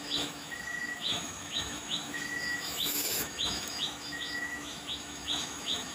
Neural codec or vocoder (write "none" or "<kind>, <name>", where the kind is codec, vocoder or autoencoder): autoencoder, DAC-VAE